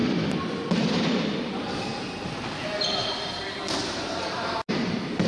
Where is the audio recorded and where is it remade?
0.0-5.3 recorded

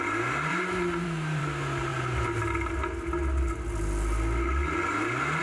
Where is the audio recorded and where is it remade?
0.0-0.5 recorded; 0.5-1.4 remade; 1.4-5.4 recorded

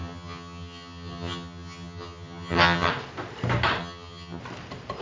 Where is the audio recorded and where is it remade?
0.0-2.9 remade; 2.9-3.8 recorded; 3.8-4.4 remade; 4.4-5.0 recorded

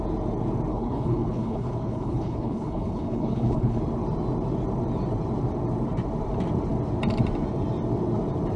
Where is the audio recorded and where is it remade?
0.0-0.7 recorded; 0.7-3.8 remade; 3.8-8.6 recorded

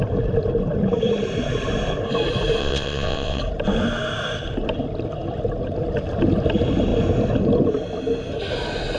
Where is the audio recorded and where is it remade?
0.0-2.6 recorded; 2.6-3.4 remade; 3.4-9.0 recorded